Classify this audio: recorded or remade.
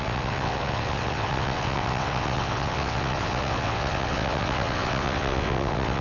remade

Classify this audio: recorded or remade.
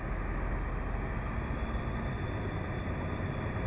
recorded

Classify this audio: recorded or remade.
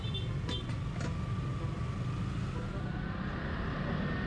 recorded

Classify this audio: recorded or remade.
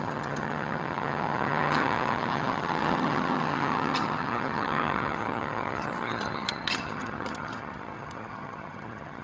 remade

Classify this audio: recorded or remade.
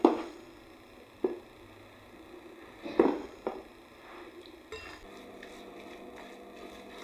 recorded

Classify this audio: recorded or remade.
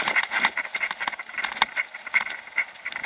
recorded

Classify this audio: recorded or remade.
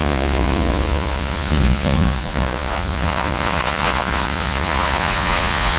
remade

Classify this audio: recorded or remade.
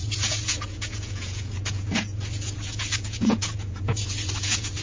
remade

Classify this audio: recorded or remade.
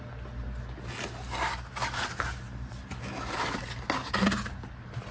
recorded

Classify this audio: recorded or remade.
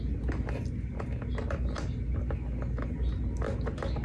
recorded